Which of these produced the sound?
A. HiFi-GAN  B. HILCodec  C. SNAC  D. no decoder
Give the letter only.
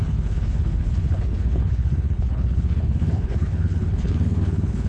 B